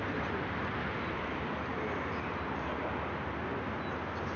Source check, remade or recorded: recorded